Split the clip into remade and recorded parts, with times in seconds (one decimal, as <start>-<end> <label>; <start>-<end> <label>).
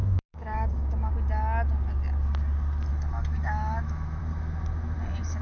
0.0-1.1 remade; 1.1-2.9 recorded; 2.9-4.2 remade; 4.2-5.4 recorded